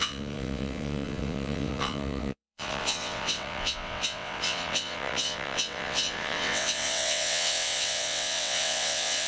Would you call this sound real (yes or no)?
no